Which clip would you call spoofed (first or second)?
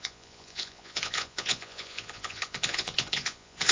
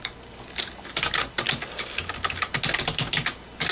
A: first